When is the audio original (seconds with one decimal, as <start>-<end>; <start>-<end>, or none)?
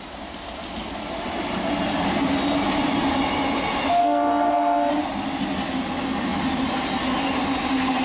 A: 0.0-4.0; 4.9-8.0